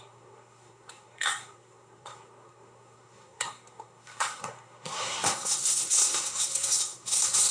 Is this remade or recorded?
remade